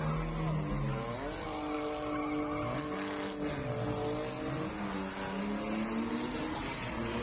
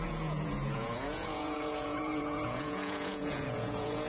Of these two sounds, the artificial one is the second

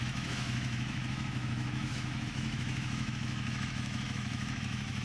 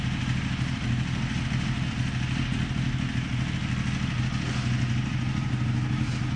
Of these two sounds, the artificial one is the first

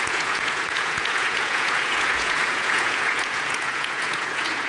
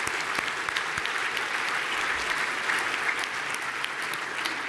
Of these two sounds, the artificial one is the first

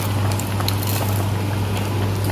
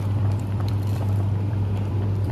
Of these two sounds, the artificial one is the second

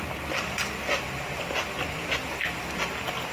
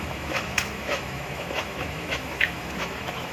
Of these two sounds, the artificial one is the second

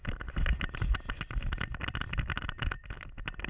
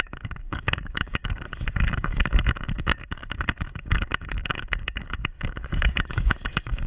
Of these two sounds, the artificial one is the second